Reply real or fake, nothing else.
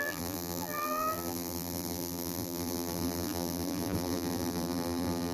fake